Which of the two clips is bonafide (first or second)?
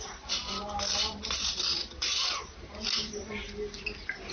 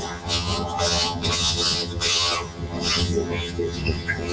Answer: first